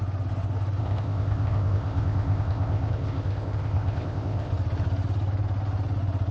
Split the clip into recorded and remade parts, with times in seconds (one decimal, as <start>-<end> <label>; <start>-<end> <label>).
0.0-0.8 recorded; 0.8-4.5 remade; 4.5-6.3 recorded